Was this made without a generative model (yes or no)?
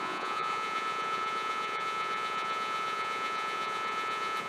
no